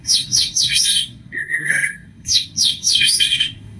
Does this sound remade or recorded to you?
remade